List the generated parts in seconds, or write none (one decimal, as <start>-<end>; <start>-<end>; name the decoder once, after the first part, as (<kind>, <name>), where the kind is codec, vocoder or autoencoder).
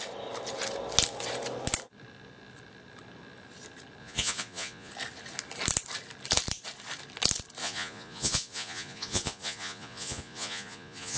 4.0-4.9 (vocoder, Vocos); 7.6-11.2